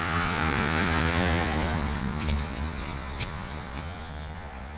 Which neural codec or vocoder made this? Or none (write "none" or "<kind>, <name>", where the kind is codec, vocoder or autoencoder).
vocoder, Vocos